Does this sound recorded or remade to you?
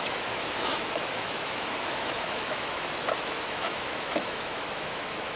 remade